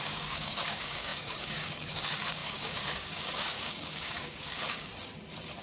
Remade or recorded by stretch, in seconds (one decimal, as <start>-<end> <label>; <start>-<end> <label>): 0.0-4.9 remade; 4.9-5.6 recorded